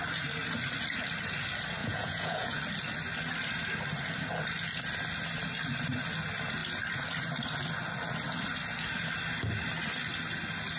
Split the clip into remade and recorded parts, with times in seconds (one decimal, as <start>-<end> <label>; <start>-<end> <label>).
0.0-1.8 recorded; 1.8-2.6 remade; 2.6-10.8 recorded